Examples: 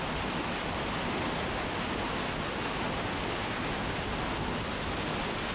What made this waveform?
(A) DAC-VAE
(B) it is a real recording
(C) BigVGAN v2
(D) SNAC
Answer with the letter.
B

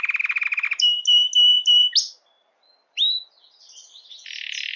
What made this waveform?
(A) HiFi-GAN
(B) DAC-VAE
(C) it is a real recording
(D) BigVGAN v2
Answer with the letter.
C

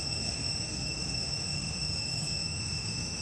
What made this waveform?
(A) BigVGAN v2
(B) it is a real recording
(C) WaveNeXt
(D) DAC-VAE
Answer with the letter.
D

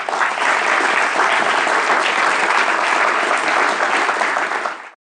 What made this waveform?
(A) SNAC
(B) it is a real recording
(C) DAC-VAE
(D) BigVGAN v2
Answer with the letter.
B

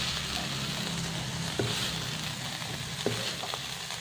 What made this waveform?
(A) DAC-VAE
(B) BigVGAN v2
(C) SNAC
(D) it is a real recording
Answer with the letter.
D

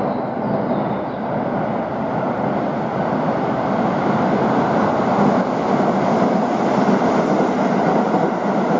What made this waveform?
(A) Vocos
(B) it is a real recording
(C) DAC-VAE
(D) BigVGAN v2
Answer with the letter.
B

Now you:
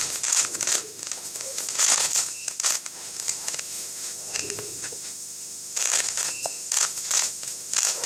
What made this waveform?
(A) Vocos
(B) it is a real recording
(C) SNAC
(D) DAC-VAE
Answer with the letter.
D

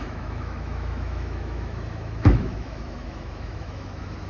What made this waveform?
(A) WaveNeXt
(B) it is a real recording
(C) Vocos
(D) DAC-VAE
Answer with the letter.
D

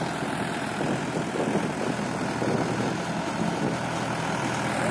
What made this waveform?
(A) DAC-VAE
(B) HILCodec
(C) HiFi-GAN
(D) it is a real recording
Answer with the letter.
D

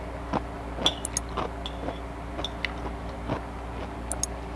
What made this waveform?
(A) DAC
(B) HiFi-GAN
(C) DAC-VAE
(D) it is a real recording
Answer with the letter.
D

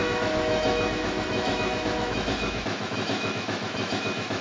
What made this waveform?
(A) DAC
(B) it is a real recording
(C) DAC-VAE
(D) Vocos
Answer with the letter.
C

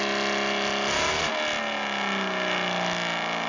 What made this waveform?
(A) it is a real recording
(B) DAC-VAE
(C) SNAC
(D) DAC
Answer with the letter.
A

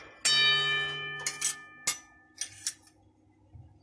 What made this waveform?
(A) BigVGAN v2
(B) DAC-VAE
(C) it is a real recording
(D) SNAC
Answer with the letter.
C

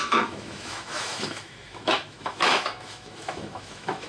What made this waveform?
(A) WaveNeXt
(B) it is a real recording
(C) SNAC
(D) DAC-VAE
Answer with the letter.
D